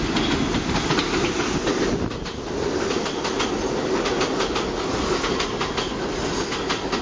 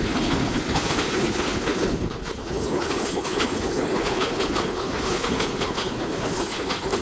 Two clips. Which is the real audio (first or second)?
first